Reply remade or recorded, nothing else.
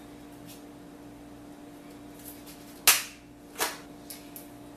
recorded